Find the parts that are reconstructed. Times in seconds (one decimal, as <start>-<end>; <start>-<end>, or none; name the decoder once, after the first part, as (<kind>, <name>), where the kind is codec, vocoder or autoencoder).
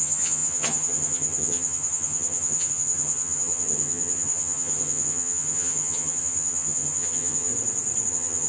0.0-7.5 (vocoder, HiFi-GAN); 8.1-8.5